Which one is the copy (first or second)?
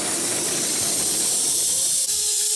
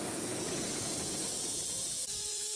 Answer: second